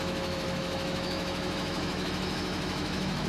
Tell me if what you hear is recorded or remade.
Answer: remade